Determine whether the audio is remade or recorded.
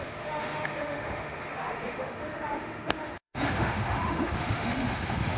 remade